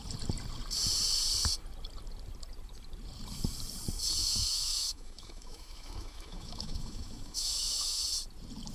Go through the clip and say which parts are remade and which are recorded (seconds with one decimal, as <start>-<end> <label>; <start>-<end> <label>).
0.0-4.2 recorded; 4.2-8.1 remade; 8.1-8.7 recorded